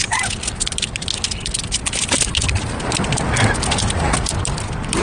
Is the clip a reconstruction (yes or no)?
no